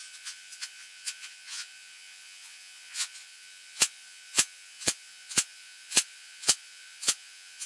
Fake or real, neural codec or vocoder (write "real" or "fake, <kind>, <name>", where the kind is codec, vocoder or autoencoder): fake, vocoder, Vocos